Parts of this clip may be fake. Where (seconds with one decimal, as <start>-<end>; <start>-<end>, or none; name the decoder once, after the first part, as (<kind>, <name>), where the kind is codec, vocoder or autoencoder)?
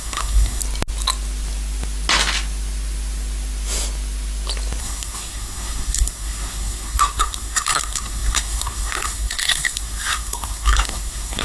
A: 0.0-0.6 (codec, SNAC); 4.8-11.4